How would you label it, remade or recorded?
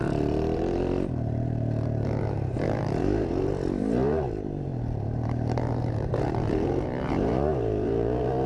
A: remade